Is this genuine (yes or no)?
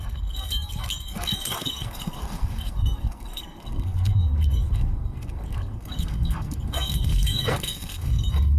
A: no